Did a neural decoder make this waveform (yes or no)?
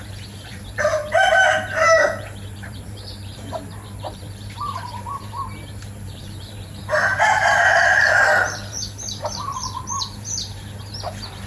yes